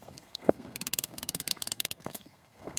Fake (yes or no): yes